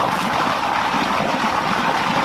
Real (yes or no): no